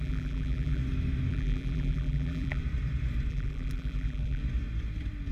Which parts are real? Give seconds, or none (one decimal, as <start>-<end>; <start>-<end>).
0.8-1.3; 2.6-3.3; 4.4-5.3